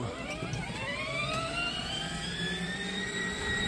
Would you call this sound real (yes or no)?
no